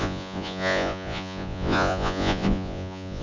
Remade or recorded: remade